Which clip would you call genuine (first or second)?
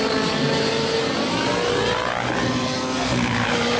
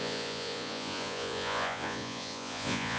first